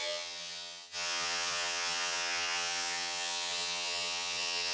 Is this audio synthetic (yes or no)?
yes